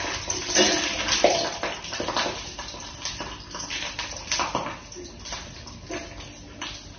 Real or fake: real